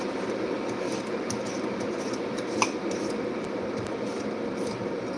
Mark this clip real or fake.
real